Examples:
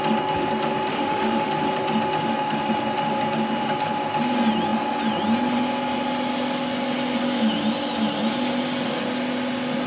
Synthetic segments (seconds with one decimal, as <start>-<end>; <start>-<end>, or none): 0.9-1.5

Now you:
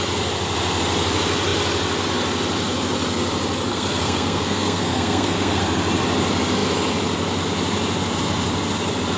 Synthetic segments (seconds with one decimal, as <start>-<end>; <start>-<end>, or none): 3.7-5.6

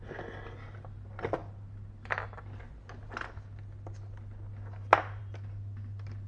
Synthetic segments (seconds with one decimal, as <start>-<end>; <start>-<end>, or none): none

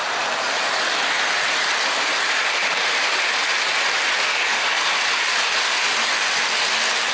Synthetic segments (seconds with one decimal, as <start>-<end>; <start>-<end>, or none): 4.3-4.9

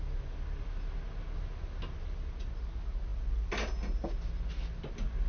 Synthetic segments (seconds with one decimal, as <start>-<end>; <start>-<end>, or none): none